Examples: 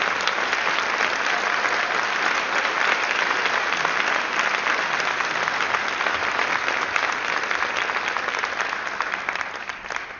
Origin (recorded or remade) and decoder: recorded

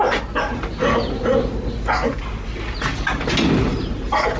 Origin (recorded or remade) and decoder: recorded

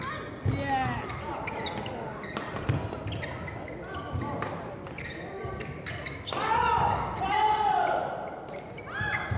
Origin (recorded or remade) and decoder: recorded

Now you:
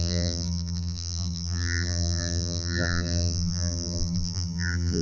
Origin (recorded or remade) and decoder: remade, vocoder, BigVGAN v2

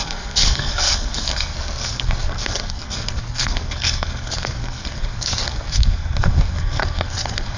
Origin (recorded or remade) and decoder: remade, codec, SNAC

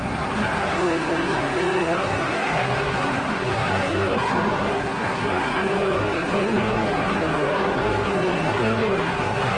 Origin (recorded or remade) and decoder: remade, codec, SNAC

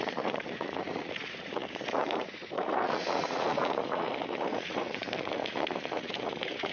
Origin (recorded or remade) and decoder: remade, vocoder, Vocos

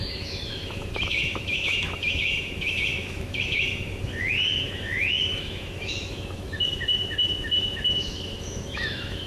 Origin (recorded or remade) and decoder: remade, autoencoder, DAC-VAE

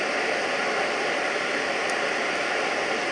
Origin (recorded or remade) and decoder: recorded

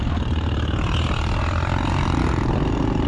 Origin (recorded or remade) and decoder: recorded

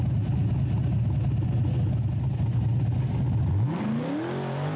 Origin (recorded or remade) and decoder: recorded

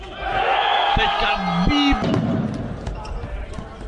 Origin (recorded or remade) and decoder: recorded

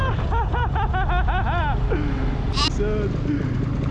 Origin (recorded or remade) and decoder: recorded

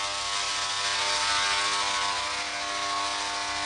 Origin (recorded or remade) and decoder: recorded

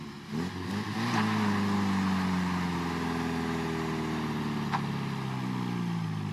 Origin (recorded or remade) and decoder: recorded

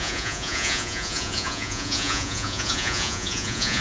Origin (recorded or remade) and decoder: remade, vocoder, Vocos